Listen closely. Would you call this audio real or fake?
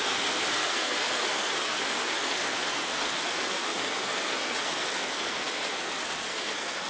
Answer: fake